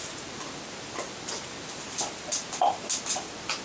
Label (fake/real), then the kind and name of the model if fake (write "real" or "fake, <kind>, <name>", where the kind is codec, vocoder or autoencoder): real